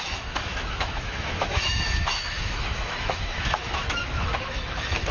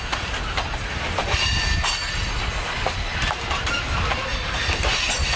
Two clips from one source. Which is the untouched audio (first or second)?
second